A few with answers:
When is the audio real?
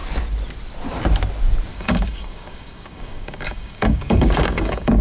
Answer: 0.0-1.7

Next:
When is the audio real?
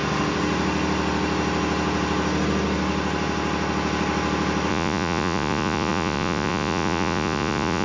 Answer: 0.0-4.7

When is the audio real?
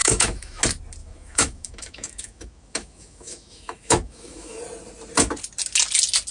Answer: 0.6-1.0; 4.6-6.3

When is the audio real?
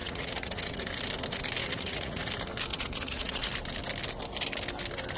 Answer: 0.9-1.6; 2.3-2.7; 3.5-5.2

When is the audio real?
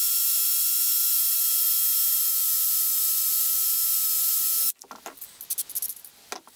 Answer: 0.0-6.6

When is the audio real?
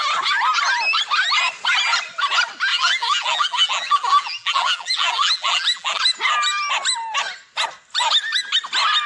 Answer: 0.0-2.7; 6.0-9.1